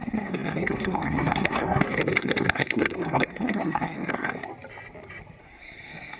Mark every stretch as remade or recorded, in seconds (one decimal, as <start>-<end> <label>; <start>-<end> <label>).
0.0-4.5 remade; 4.5-5.4 recorded; 5.4-6.2 remade